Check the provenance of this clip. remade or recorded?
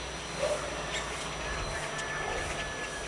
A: recorded